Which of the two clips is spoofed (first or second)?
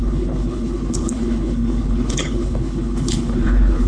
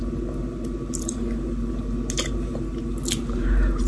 first